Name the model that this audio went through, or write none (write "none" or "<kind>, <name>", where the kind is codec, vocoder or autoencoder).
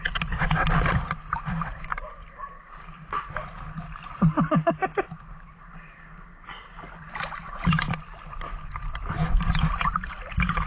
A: none